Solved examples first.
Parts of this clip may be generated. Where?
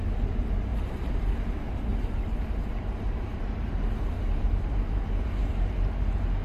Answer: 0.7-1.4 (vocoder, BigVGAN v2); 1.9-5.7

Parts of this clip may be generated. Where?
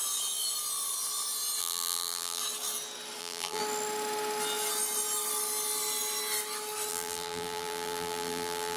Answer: 1.6-2.4 (vocoder, BigVGAN v2); 3.2-3.6; 6.9-8.8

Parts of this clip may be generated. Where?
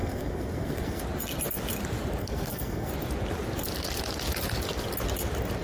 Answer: 0.0-1.0 (codec, SNAC); 2.2-2.9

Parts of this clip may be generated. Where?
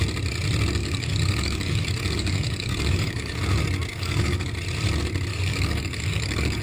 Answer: 0.8-3.4 (codec, DAC); 3.9-4.5; 5.3-6.6